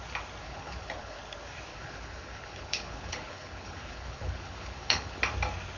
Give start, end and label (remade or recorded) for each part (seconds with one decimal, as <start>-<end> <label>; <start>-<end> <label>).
0.0-0.4 recorded; 0.4-1.2 remade; 1.2-1.7 recorded; 1.7-5.2 remade; 5.2-5.8 recorded